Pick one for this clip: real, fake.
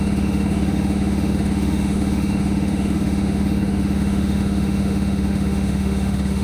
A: fake